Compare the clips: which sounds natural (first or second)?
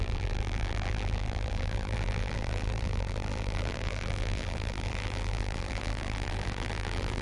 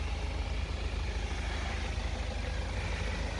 second